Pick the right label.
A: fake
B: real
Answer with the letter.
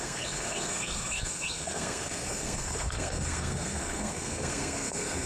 A